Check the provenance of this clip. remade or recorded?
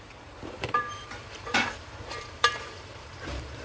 remade